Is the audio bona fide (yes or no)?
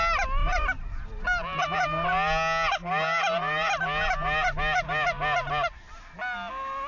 yes